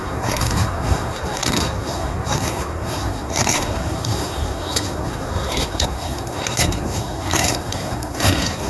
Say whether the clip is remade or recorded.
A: remade